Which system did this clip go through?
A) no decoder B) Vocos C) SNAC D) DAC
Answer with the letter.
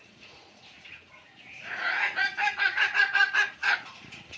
B